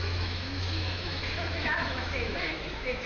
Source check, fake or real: fake